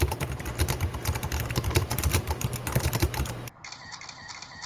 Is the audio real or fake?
real